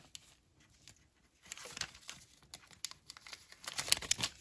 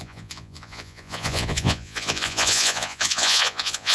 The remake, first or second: second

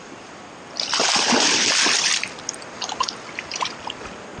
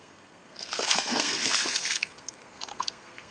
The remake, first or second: second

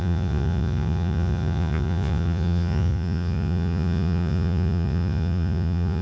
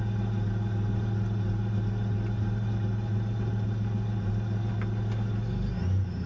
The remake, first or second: first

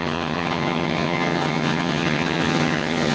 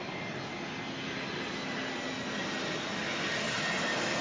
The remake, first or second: first